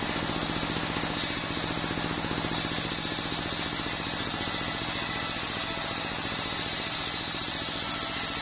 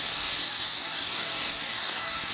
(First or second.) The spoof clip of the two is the second